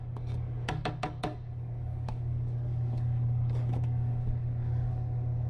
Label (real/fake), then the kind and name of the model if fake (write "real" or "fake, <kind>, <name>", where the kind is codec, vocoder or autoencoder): fake, codec, DAC